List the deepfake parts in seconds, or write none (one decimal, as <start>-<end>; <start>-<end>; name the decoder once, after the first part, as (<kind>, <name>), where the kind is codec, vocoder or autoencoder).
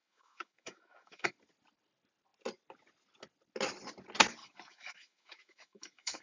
0.0-1.3 (autoencoder, DAC-VAE); 4.4-6.2